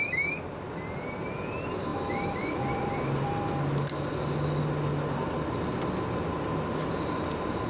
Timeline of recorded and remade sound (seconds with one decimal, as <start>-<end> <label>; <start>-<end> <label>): 0.0-1.9 recorded; 1.9-3.5 remade; 3.5-7.7 recorded

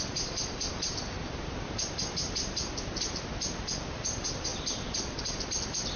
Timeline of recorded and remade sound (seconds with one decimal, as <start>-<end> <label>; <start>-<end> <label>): 0.0-6.0 recorded

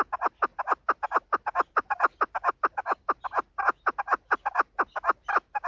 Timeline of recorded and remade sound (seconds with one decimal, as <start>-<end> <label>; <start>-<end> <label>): 0.0-4.3 remade; 4.3-5.2 recorded; 5.2-5.7 remade